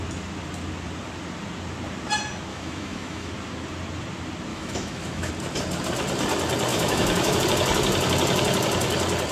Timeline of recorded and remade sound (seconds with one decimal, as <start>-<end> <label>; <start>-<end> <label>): 0.0-2.5 recorded; 2.5-3.3 remade; 3.3-4.5 recorded; 4.5-5.3 remade; 5.3-6.7 recorded; 6.7-7.4 remade; 7.4-9.3 recorded